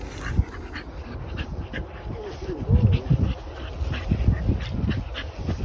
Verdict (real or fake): real